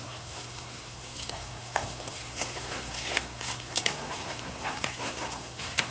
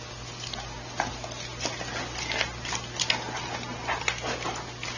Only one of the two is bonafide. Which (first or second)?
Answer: second